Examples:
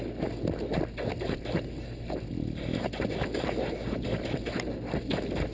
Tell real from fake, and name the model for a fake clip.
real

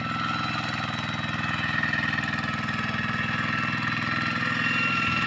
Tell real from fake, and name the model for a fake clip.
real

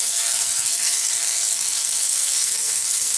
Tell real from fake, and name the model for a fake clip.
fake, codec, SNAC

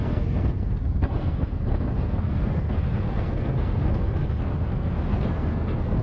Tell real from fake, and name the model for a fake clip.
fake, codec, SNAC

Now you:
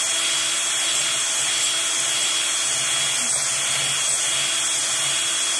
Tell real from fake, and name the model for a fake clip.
real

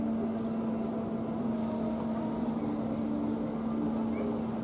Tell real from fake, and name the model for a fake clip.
real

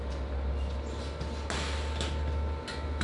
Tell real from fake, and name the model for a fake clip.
real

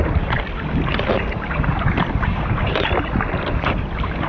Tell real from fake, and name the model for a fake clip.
real